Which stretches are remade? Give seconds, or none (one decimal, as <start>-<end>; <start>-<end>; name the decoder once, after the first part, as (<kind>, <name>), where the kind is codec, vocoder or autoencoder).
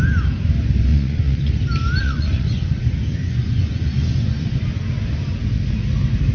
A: 0.9-1.5 (vocoder, Vocos); 2.0-2.8; 3.2-4.7